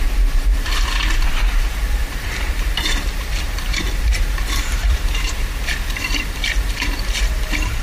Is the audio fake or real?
fake